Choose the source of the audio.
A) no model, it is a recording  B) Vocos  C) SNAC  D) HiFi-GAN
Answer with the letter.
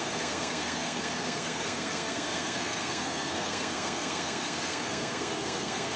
C